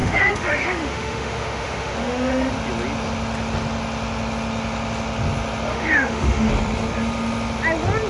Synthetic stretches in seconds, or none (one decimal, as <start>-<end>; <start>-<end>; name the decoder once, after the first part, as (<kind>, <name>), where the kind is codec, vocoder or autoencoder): 0.0-2.5 (autoencoder, DAC-VAE); 5.7-6.5